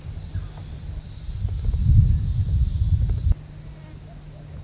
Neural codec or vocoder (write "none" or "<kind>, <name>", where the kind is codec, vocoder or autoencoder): none